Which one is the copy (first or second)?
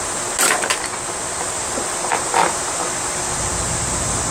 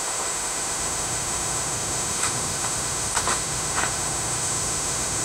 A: second